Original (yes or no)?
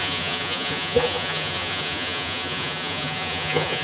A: no